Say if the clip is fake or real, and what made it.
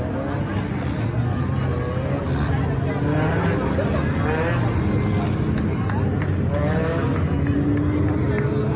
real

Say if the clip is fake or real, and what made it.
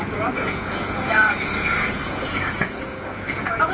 fake, vocoder, Vocos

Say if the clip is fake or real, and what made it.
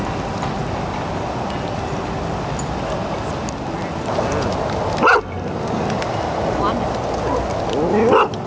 real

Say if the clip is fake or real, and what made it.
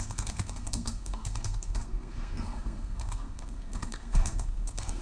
fake, codec, SNAC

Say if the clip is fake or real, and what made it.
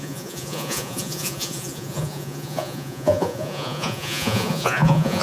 fake, vocoder, Vocos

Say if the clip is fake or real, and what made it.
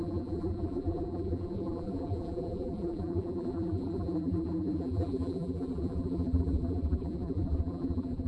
fake, vocoder, BigVGAN v2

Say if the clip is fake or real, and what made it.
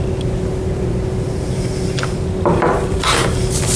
real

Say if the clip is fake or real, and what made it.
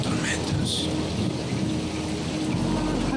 real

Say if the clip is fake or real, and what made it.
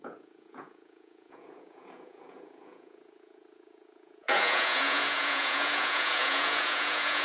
fake, vocoder, Vocos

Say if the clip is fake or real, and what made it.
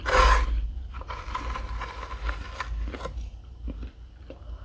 real